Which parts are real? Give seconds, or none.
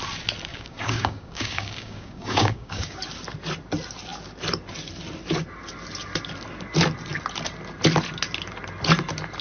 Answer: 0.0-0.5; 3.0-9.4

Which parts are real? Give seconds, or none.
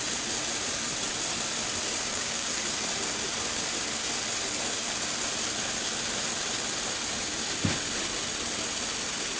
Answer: 0.0-2.1; 2.6-9.4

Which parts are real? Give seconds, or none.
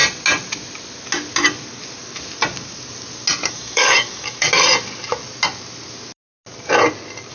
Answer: 0.0-3.5; 4.5-7.3